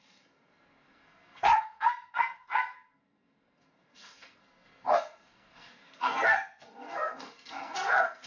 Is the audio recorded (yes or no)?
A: no